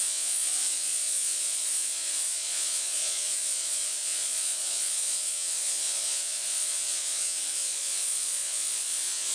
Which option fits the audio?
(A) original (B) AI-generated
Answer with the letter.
B